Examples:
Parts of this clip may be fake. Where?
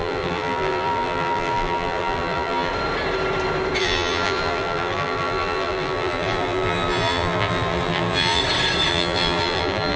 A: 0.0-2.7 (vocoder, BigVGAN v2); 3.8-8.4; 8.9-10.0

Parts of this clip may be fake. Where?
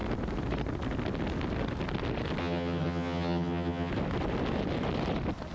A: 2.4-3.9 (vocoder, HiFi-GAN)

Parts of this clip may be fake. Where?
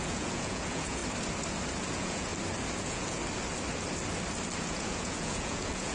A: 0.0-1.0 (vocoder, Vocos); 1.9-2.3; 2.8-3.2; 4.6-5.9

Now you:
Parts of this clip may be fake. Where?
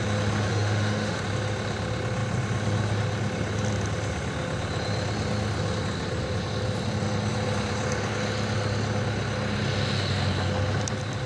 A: 0.5-1.2 (autoencoder, DAC-VAE)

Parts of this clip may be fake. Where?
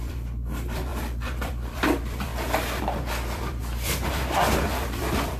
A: 0.0-0.9 (vocoder, BigVGAN v2); 1.4-2.3; 2.8-3.6; 4.1-5.4